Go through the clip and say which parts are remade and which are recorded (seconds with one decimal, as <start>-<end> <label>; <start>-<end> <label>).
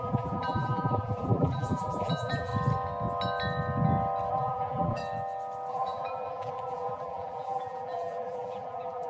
0.0-2.5 remade; 2.5-4.3 recorded; 4.3-5.0 remade; 5.0-5.7 recorded; 5.7-9.1 remade